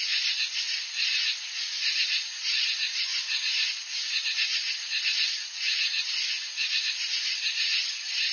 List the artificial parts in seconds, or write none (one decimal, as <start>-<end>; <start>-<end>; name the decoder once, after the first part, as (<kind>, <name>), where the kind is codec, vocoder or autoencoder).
none